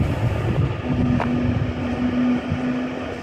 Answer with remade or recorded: recorded